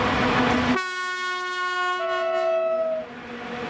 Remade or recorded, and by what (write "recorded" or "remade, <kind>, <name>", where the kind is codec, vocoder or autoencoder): recorded